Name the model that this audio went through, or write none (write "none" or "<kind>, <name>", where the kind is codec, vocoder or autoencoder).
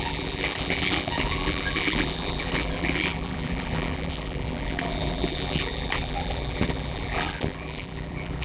vocoder, BigVGAN v2